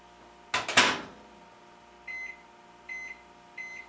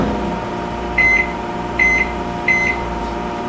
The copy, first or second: second